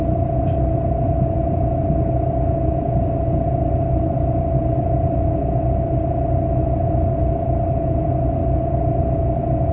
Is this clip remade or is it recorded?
recorded